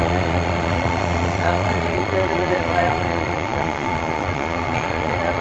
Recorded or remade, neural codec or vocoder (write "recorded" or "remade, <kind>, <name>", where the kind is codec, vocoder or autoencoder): remade, vocoder, Vocos